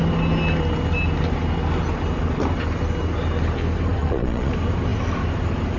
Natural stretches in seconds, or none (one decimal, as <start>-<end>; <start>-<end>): 0.0-4.0; 4.5-5.8

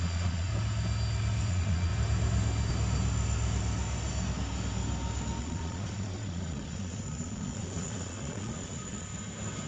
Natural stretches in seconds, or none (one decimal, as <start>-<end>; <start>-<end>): 0.5-1.5; 1.9-5.4; 9.1-9.7